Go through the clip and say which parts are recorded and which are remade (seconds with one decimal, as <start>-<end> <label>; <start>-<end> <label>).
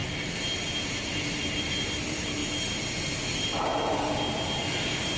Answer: 0.0-0.9 recorded; 0.9-2.4 remade; 2.4-3.3 recorded; 3.3-3.7 remade; 3.7-5.2 recorded